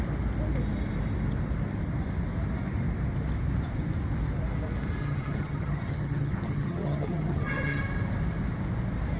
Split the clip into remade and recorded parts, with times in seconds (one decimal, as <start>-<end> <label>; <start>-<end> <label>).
0.0-5.0 recorded; 5.0-7.8 remade; 7.8-9.2 recorded